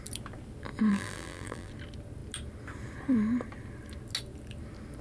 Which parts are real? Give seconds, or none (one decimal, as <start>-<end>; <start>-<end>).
0.0-0.9; 1.7-5.0